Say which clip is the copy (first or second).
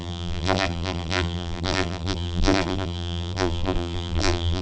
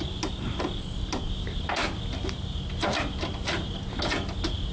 first